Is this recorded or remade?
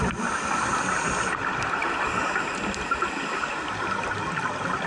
recorded